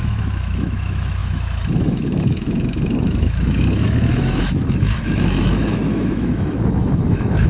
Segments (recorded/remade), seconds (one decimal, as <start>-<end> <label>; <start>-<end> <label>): 0.0-7.5 remade